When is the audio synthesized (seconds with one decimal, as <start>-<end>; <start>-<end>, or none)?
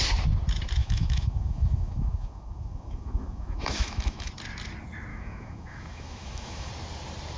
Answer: 0.8-4.3; 5.1-6.7